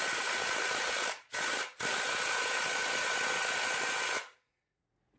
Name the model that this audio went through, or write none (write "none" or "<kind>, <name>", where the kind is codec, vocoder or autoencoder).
vocoder, Vocos